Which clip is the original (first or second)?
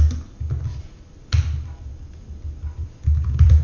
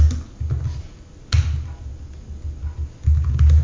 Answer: second